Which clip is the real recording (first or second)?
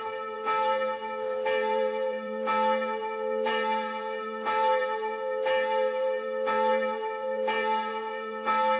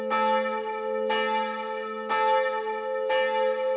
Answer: second